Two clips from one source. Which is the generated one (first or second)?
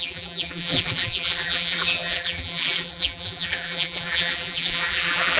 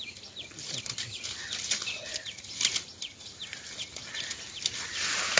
first